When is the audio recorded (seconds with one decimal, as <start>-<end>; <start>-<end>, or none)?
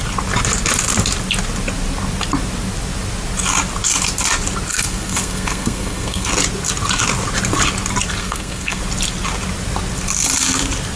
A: 0.0-4.7; 6.3-8.2; 8.8-11.0